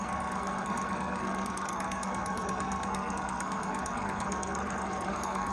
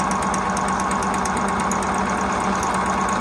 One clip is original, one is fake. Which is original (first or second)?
second